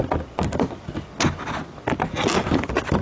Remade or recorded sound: recorded